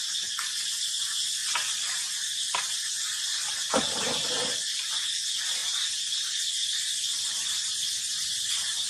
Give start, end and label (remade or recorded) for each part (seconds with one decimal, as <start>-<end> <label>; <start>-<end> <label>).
0.0-8.9 recorded